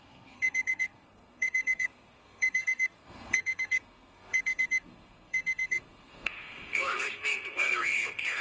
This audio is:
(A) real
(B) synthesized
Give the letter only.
B